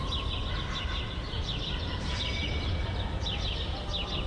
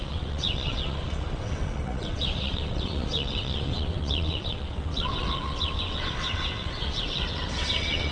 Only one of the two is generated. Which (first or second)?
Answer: second